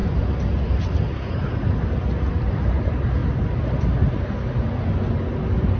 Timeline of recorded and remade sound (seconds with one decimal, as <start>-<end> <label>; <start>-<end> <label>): 0.0-1.3 remade; 1.3-5.8 recorded